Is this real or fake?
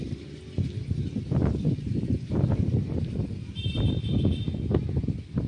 real